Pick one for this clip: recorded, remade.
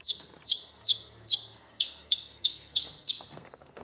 remade